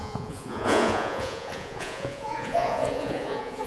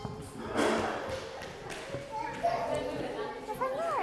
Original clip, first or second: second